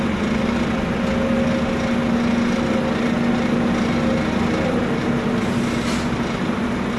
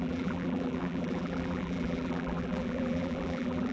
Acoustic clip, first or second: first